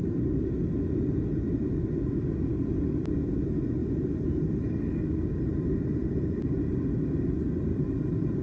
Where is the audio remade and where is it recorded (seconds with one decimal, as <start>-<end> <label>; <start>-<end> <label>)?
0.0-3.8 recorded; 3.8-4.4 remade; 4.4-7.7 recorded; 7.7-8.4 remade